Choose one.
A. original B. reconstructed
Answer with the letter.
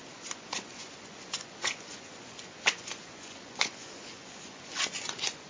B